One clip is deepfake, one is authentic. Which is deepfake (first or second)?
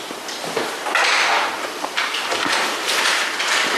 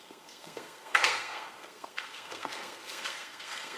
second